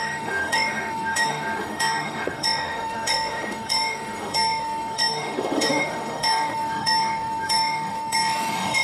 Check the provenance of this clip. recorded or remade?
remade